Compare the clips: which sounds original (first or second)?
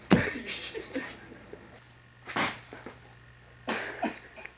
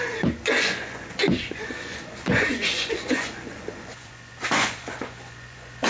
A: first